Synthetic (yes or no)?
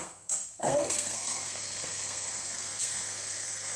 yes